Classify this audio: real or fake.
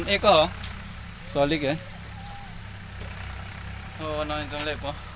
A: real